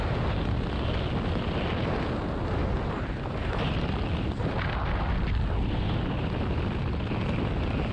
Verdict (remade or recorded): recorded